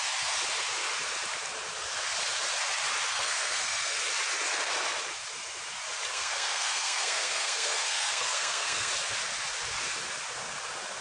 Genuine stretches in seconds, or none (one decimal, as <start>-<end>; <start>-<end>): 0.0-3.1; 4.0-6.1; 8.9-11.0